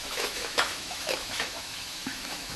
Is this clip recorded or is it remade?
remade